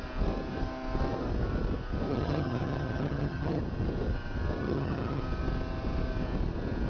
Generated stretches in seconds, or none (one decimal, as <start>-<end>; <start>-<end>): 2.1-3.6; 4.6-5.2